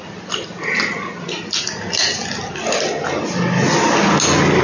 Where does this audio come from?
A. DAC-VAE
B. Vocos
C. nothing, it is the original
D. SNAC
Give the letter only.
C